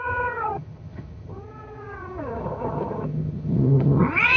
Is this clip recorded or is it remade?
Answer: remade